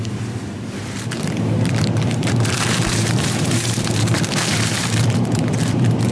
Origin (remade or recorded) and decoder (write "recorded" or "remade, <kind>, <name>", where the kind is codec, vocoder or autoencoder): remade, vocoder, BigVGAN v2